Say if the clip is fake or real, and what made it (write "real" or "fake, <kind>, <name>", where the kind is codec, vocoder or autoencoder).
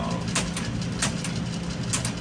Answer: real